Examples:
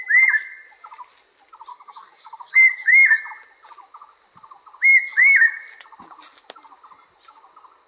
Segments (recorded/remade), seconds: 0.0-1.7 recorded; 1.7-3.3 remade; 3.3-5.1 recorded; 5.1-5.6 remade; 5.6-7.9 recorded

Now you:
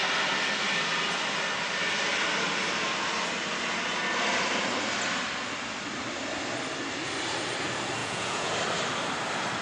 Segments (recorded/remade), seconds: 0.0-8.0 recorded; 8.0-8.5 remade; 8.5-9.6 recorded

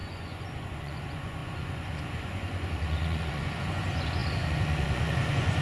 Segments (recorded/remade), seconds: 0.0-5.6 remade

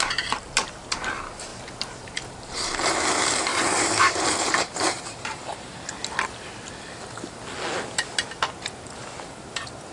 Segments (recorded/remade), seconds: 0.0-6.0 remade; 6.0-9.4 recorded; 9.4-9.9 remade